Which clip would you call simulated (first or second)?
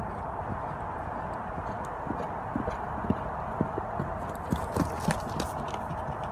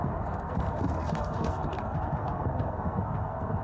second